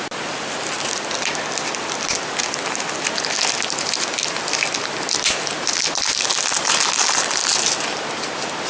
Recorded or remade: recorded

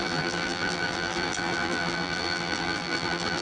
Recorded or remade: remade